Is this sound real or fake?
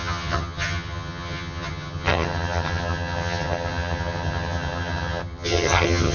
fake